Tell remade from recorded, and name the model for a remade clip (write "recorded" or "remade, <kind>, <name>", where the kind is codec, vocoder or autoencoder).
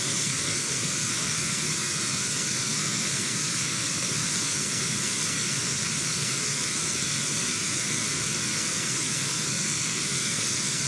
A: remade, codec, SNAC